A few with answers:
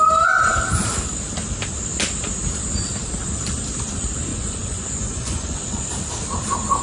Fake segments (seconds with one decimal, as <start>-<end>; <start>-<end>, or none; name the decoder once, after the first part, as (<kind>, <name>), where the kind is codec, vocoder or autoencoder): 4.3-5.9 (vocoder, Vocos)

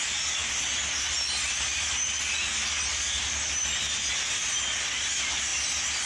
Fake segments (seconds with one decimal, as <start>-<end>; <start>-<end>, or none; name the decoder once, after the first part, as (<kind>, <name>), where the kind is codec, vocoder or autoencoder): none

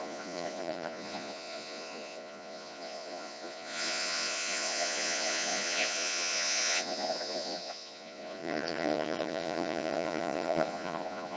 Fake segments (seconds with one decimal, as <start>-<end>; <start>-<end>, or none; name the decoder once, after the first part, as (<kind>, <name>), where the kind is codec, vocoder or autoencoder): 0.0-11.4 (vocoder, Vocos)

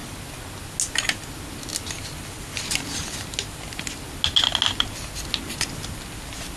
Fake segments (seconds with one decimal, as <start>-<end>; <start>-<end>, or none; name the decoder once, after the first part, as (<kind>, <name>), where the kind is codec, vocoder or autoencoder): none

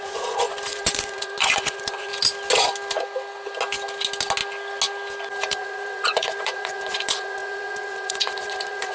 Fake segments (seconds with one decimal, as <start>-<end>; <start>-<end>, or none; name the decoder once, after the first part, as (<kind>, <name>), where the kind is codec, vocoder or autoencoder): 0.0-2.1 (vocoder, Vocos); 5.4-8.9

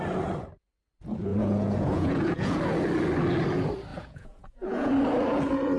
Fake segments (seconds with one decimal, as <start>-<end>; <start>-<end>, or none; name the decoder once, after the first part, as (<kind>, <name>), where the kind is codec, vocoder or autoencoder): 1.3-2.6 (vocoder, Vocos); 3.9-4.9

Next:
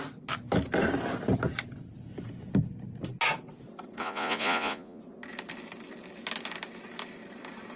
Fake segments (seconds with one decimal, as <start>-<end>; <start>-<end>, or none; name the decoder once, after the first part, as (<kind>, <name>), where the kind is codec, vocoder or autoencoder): 4.0-5.0 (vocoder, Vocos)